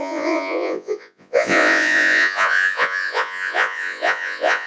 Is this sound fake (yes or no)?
yes